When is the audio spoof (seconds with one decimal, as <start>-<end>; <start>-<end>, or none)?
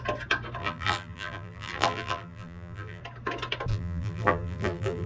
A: 0.6-3.0; 3.7-5.1